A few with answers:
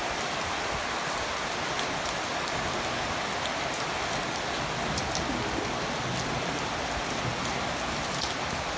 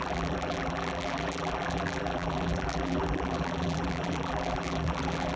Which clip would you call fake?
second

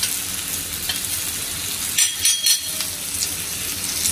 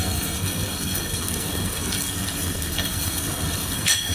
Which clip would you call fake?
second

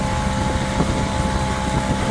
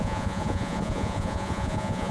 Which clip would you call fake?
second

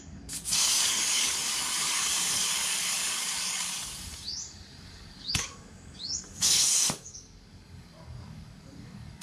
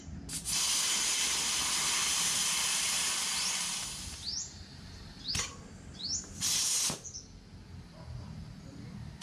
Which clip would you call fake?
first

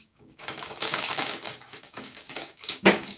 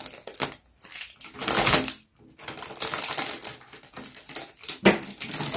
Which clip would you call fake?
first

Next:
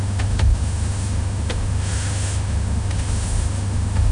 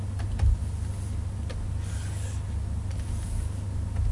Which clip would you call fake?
first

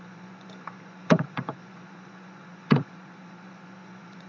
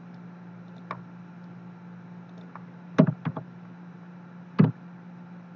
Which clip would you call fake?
first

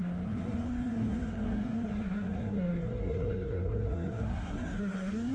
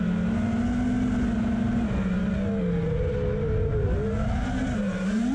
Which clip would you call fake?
first